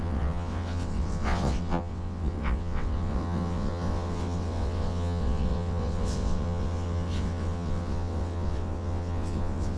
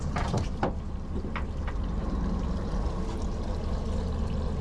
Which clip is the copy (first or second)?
first